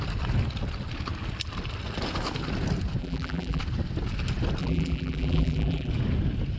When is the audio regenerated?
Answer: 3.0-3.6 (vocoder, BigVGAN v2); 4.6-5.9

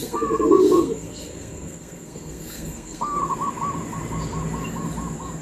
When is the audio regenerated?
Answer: 0.0-3.2 (codec, SNAC)

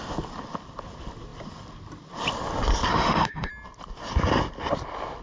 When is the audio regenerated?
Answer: 2.9-3.5 (autoencoder, DAC-VAE)